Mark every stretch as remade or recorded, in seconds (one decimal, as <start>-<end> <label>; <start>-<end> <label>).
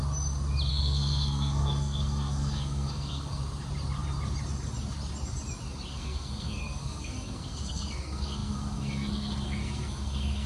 0.0-0.7 recorded; 0.7-3.4 remade; 3.4-5.9 recorded; 5.9-10.5 remade